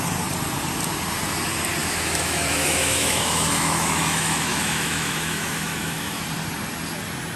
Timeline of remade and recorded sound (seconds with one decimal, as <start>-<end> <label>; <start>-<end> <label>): 0.0-1.8 recorded; 1.8-6.2 remade; 6.2-7.4 recorded